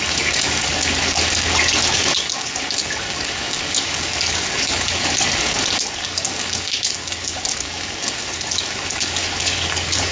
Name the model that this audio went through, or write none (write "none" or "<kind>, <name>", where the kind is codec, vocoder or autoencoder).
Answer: codec, DAC